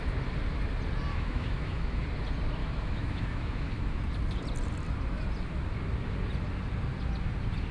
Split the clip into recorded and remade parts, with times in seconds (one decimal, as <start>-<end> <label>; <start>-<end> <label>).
0.0-1.1 recorded; 1.1-2.0 remade; 2.0-2.6 recorded; 2.6-4.0 remade; 4.0-7.7 recorded